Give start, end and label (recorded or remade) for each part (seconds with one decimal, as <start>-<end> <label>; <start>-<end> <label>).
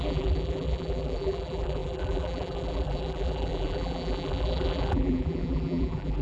0.0-6.2 remade